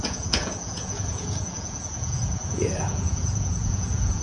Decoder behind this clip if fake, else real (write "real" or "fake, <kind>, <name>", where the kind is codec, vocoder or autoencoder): fake, vocoder, Vocos